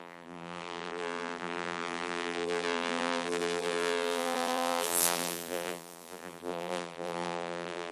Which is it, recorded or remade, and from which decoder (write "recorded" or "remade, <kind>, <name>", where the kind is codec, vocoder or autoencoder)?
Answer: remade, vocoder, BigVGAN v2